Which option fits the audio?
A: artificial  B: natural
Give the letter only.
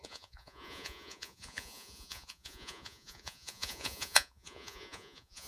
A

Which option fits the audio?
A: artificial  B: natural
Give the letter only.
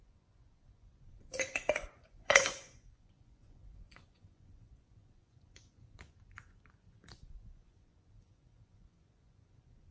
A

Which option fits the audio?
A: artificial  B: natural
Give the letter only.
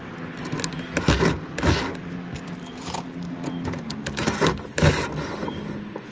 B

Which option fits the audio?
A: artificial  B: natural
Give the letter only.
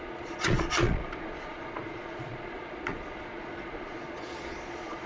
A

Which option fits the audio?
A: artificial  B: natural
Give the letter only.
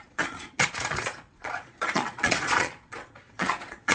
A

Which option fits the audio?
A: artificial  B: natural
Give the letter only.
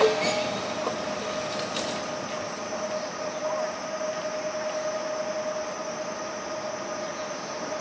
B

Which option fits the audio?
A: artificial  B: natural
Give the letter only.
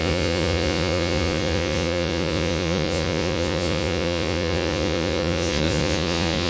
A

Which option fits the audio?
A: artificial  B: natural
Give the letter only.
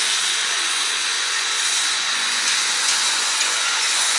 A